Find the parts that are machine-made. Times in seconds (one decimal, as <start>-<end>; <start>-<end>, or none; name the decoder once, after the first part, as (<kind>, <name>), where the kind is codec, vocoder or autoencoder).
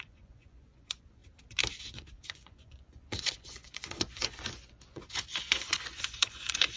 0.0-1.2 (vocoder, Vocos); 1.8-6.8